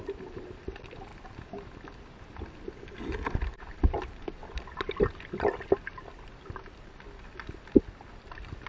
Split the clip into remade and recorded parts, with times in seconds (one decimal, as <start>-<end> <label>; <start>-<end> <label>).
0.0-1.1 remade; 1.1-3.3 recorded; 3.3-4.4 remade; 4.4-8.1 recorded; 8.1-8.7 remade

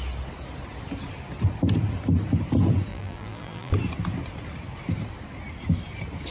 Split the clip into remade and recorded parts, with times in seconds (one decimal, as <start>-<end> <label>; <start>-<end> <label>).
0.0-2.9 recorded; 2.9-3.7 remade; 3.7-6.3 recorded